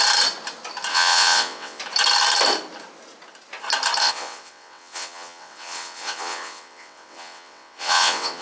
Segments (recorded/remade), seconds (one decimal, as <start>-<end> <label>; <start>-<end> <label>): 0.0-0.9 recorded; 0.9-1.8 remade; 1.8-4.0 recorded; 4.0-8.4 remade